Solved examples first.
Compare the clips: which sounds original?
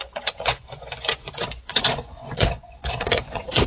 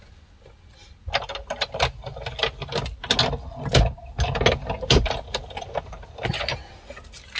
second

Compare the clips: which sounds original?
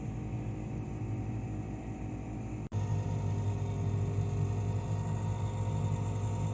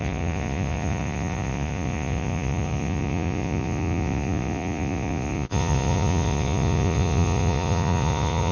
first